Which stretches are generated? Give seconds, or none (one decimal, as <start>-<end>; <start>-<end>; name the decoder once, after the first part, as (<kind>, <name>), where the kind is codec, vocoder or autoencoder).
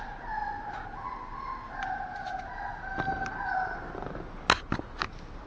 none